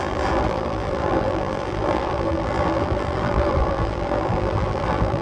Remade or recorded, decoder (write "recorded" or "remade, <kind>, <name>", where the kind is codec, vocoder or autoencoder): remade, vocoder, BigVGAN v2